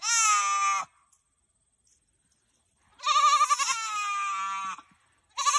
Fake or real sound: real